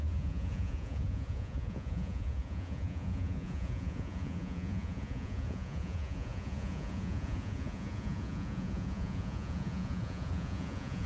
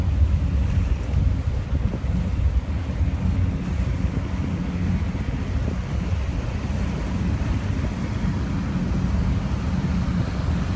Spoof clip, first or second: first